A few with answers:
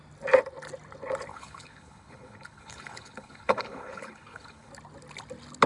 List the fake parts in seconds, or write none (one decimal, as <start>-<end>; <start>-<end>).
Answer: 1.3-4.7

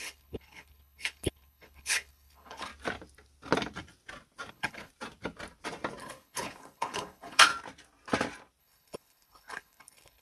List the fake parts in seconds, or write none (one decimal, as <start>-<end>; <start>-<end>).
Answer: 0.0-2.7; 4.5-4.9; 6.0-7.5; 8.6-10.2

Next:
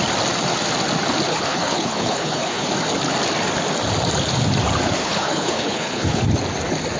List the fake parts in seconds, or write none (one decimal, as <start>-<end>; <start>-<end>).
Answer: 1.3-2.7; 5.0-6.2

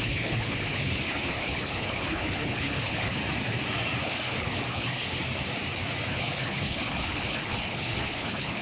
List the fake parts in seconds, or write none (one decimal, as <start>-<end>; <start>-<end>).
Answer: 0.0-3.2; 4.0-5.2; 6.1-8.6

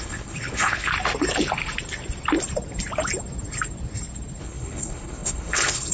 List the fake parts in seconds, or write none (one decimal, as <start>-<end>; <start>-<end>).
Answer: 0.0-0.9; 4.4-5.9

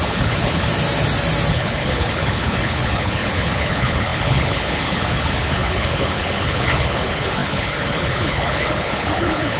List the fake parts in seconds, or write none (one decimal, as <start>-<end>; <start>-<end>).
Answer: 0.0-0.7; 1.5-9.6

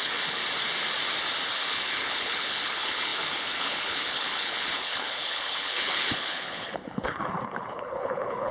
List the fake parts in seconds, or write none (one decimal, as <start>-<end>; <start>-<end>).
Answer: 0.0-0.4; 1.7-8.5